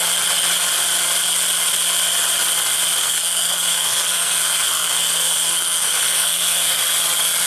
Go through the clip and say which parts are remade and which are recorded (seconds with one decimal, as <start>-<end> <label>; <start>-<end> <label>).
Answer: 0.0-3.0 recorded; 3.0-6.8 remade; 6.8-7.5 recorded